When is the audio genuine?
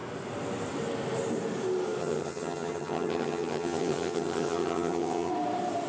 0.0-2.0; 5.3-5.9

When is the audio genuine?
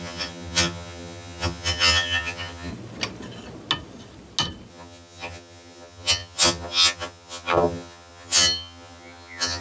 2.7-4.7